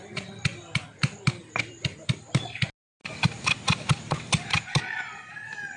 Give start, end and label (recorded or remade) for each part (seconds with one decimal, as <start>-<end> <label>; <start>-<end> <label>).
0.0-5.8 recorded